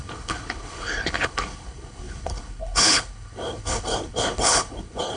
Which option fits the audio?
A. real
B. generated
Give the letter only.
B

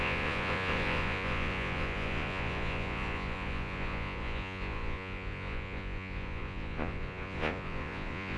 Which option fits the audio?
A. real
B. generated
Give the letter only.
B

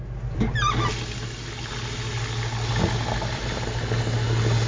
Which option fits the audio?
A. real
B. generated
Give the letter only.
A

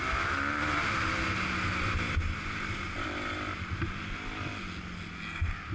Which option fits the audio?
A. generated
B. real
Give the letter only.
B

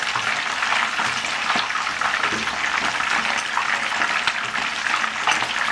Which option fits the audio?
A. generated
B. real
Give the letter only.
B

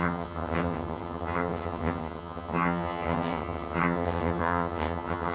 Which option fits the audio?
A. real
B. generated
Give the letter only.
B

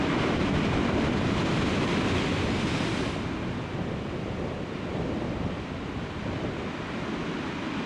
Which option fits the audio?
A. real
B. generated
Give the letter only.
B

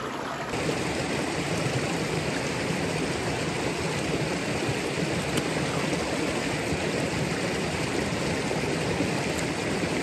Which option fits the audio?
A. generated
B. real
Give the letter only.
B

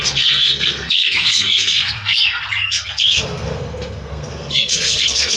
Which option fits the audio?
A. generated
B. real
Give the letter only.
A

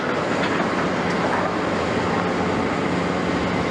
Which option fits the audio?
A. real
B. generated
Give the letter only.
A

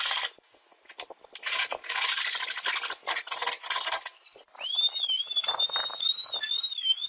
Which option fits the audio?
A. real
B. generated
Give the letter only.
A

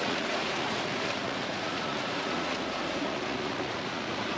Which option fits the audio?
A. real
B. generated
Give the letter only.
B